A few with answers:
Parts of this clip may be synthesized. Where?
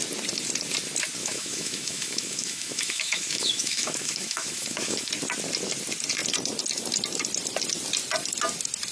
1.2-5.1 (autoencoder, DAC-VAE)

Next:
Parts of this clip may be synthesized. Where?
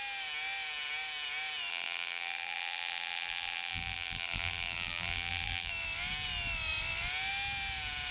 1.7-5.7 (vocoder, BigVGAN v2)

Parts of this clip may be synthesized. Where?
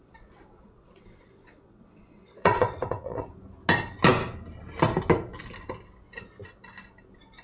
0.0-3.3 (vocoder, WaveNeXt)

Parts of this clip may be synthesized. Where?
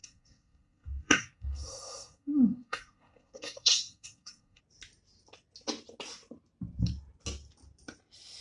0.0-4.6 (codec, SNAC)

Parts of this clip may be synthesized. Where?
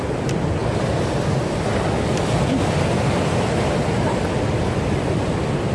none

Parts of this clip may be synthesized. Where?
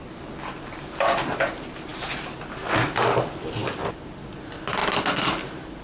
none